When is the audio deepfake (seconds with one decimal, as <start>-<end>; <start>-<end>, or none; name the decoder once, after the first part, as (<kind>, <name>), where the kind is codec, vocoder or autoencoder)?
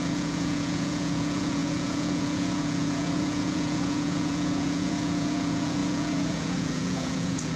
0.0-7.6 (vocoder, Vocos)